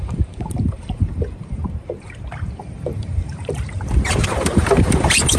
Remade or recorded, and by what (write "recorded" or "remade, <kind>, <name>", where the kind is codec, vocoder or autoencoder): remade, vocoder, BigVGAN v2